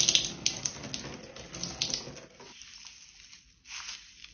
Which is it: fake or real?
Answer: real